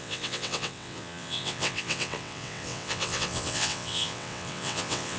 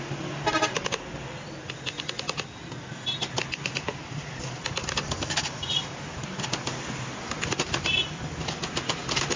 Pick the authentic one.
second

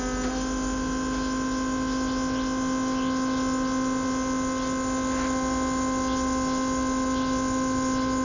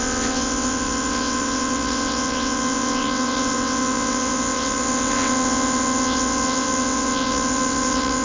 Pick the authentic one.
first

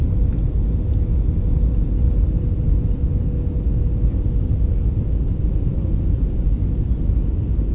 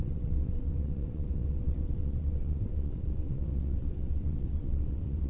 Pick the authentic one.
first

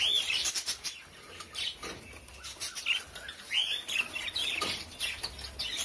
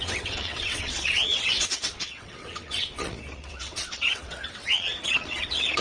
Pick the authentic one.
first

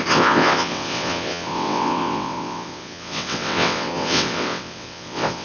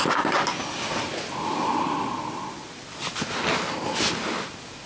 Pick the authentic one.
second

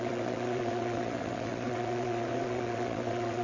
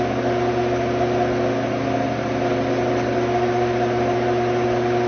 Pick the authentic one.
second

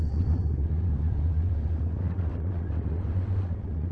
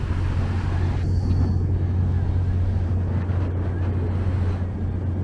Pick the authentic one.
second